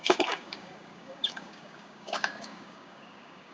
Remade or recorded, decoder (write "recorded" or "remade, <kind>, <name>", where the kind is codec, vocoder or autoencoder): remade, codec, DAC